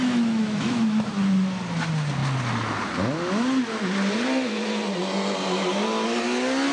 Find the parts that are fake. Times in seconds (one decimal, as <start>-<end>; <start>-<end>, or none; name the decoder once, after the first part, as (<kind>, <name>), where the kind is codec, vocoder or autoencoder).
0.0-1.1 (autoencoder, DAC-VAE)